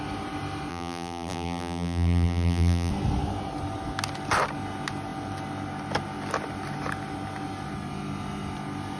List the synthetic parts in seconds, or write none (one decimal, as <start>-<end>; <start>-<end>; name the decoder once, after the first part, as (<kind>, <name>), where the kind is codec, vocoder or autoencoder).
0.7-2.9 (vocoder, BigVGAN v2)